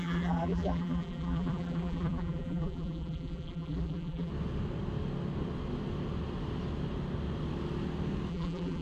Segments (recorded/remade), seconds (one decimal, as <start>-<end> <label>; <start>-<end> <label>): 0.0-4.3 remade; 4.3-8.3 recorded; 8.3-8.8 remade